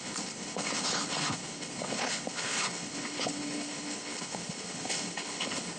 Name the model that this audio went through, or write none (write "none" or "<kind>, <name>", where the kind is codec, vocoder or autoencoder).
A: codec, HILCodec